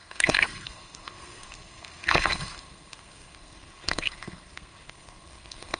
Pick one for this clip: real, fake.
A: fake